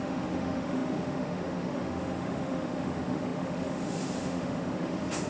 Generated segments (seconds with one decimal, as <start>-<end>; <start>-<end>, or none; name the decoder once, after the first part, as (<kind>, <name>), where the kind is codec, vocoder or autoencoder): 0.0-5.3 (autoencoder, DAC-VAE)